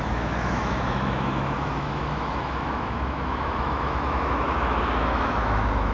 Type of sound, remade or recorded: remade